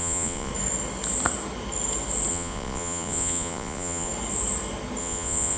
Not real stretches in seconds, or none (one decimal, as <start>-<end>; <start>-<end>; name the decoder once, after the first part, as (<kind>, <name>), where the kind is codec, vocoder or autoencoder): 0.0-0.5 (vocoder, Vocos); 2.3-4.1; 5.0-5.6